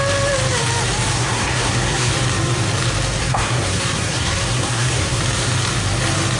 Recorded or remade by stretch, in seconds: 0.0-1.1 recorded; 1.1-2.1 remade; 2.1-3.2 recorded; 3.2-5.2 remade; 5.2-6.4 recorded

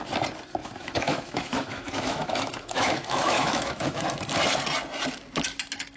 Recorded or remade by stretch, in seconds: 0.0-0.6 recorded; 0.6-4.0 remade; 4.0-6.0 recorded

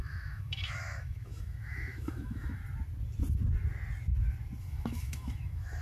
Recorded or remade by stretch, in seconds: 0.0-2.6 remade; 2.6-4.6 recorded; 4.6-5.8 remade